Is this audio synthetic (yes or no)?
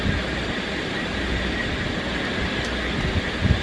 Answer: no